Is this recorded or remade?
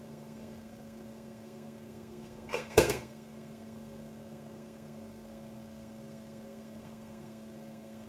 remade